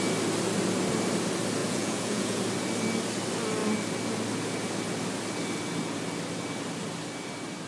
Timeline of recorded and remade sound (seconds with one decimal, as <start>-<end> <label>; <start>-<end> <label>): 0.0-1.6 recorded; 1.6-2.4 remade; 2.4-7.7 recorded